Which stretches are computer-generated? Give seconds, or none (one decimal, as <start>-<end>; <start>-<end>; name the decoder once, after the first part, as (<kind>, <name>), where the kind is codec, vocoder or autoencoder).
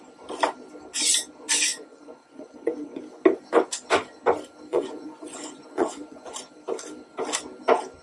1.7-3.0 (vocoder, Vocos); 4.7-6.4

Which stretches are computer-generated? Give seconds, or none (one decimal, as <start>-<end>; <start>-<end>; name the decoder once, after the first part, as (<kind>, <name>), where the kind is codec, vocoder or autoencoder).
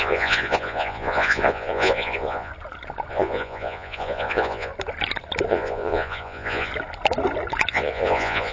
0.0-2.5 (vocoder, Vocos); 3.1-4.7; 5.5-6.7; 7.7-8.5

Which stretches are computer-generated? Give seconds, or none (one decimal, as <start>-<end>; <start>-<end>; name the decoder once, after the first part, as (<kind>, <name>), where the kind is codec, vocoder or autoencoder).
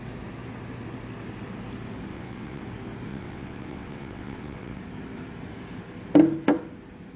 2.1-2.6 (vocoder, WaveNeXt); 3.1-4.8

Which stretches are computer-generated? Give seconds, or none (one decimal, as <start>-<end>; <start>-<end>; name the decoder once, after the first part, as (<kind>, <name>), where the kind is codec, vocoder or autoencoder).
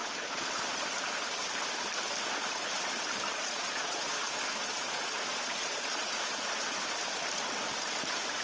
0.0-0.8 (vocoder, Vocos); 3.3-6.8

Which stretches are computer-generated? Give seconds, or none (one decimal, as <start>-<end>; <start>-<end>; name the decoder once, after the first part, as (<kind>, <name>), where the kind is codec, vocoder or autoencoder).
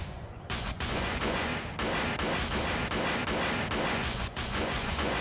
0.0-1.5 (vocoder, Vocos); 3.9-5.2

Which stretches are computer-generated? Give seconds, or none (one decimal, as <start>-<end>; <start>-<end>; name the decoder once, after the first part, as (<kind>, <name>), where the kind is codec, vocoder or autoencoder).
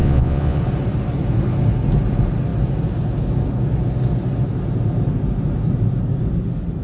0.0-0.6 (vocoder, Vocos)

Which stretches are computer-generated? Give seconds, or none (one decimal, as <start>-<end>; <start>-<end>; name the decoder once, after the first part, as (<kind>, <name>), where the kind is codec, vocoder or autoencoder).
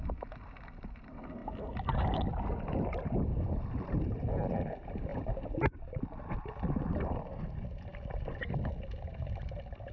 none